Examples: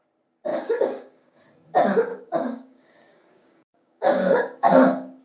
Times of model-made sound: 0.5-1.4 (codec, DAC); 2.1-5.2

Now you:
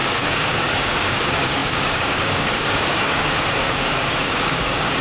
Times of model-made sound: 0.0-5.0 (codec, DAC)

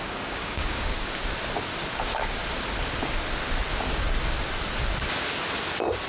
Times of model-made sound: 0.0-0.9 (codec, DAC); 2.0-2.4

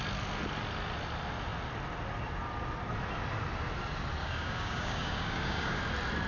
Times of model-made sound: 4.2-5.8 (codec, DAC)

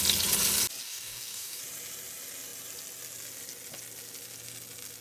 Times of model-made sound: 0.8-1.6 (codec, DAC)